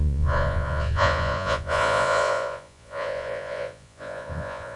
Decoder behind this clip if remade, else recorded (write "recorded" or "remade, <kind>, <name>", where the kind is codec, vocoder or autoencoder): remade, vocoder, Vocos